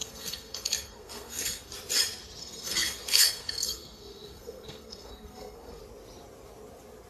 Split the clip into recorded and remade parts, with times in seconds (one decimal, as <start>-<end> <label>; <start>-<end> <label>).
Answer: 0.0-1.7 remade; 1.7-2.4 recorded; 2.4-5.8 remade; 5.8-7.1 recorded